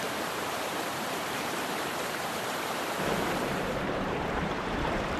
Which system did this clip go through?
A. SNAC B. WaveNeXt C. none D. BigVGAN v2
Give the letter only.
D